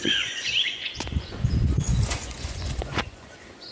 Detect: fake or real fake